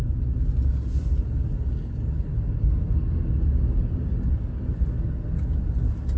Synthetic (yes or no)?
no